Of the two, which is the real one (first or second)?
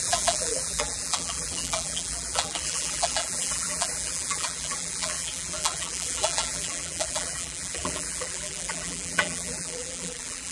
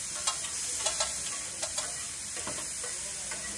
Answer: second